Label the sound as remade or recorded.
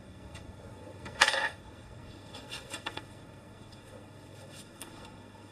remade